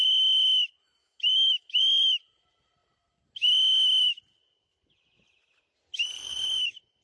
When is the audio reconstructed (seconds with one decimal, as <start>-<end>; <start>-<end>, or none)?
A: 1.0-1.8